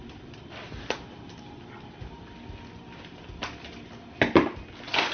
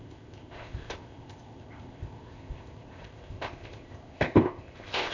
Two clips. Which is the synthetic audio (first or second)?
second